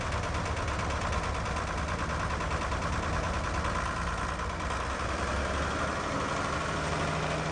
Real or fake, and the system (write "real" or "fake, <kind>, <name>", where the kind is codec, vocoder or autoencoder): real